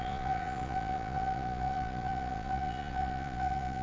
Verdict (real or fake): fake